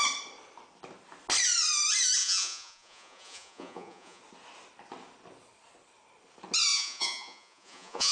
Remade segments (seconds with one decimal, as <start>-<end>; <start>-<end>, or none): 2.2-4.2; 6.7-8.1